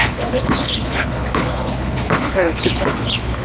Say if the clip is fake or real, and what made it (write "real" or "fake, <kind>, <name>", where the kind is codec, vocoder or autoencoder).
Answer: fake, codec, HILCodec